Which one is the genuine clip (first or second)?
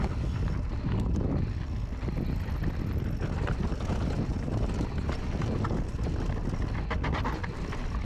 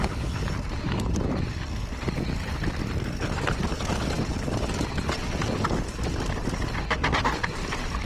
first